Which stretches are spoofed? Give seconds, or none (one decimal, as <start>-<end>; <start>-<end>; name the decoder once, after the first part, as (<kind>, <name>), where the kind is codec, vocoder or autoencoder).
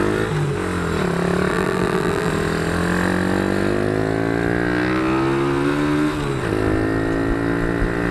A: 1.5-2.3 (vocoder, BigVGAN v2)